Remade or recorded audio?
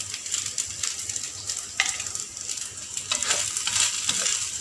recorded